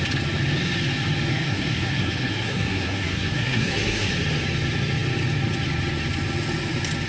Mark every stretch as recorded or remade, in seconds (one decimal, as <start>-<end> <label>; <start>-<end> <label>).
0.0-1.3 recorded; 1.3-4.1 remade; 4.1-7.1 recorded